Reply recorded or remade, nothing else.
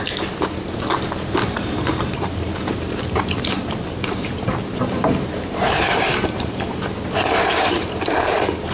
remade